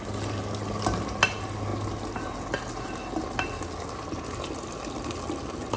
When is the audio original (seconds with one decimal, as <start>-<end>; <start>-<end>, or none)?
0.0-5.8